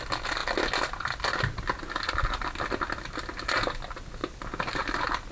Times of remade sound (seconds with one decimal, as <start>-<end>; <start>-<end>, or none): 4.2-4.8